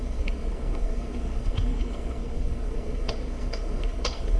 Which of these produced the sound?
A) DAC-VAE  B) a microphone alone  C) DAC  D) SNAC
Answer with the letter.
D